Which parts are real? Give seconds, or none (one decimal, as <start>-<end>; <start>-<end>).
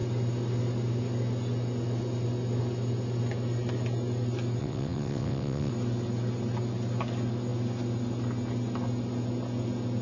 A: 0.0-4.6; 5.7-10.0